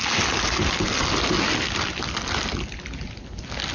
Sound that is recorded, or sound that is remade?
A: recorded